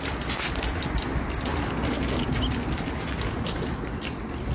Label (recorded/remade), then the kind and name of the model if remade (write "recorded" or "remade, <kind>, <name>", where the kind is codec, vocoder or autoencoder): recorded